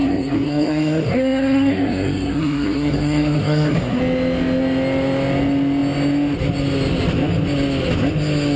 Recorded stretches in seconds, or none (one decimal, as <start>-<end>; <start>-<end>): 4.0-8.6

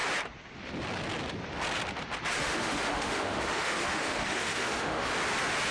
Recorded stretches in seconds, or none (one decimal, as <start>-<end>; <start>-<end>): 0.0-2.4; 5.1-5.7